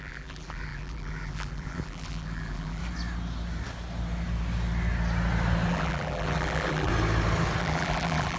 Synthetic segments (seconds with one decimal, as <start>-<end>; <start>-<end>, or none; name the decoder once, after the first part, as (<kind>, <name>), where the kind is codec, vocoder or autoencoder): 0.0-2.8 (vocoder, BigVGAN v2); 5.7-6.9; 7.6-8.4